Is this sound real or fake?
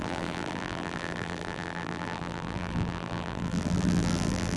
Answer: fake